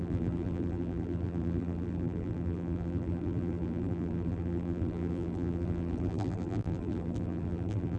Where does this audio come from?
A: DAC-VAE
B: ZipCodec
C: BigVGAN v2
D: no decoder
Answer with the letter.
C